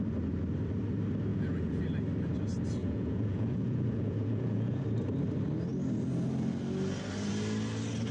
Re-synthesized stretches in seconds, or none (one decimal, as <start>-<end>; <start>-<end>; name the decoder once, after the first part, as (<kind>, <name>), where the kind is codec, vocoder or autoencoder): 1.3-1.8 (vocoder, Vocos); 2.8-4.8